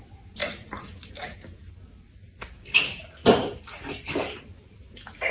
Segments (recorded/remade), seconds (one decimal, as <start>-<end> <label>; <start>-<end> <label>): 0.0-0.4 recorded; 0.4-1.1 remade; 1.1-2.2 recorded; 2.2-2.8 remade; 2.8-3.2 recorded; 3.2-4.4 remade; 4.4-5.3 recorded